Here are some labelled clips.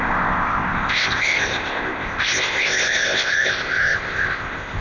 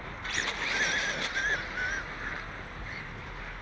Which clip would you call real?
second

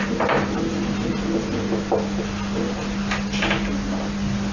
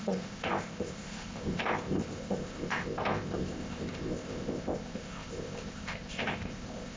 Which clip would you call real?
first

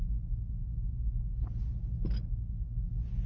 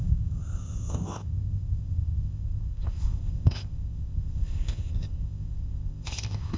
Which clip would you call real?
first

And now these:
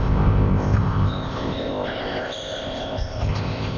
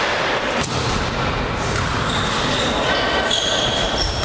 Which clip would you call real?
second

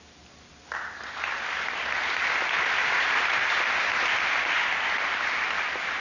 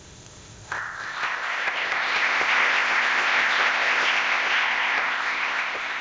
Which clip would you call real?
first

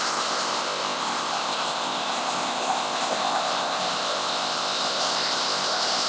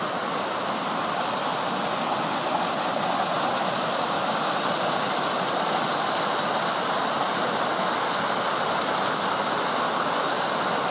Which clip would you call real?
second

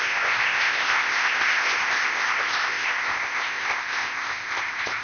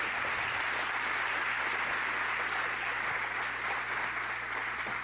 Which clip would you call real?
second